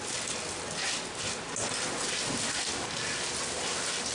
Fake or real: real